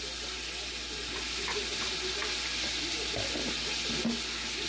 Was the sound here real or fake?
real